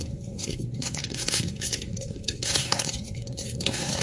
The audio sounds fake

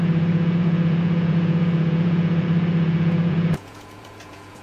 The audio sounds fake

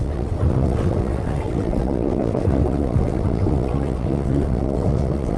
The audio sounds fake